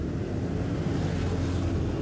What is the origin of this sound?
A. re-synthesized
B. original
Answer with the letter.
B